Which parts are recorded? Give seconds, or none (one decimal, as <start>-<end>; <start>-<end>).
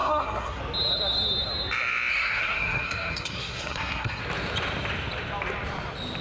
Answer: 0.6-2.1; 4.2-6.2